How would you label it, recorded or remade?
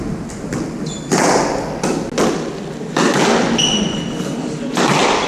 recorded